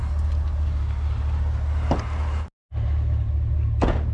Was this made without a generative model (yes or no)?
yes